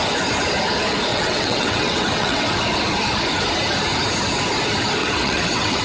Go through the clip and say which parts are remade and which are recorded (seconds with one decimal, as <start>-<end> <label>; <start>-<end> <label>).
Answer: 0.0-1.1 recorded; 1.1-2.4 remade; 2.4-5.0 recorded; 5.0-5.8 remade